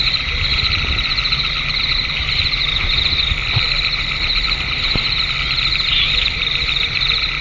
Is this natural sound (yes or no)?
yes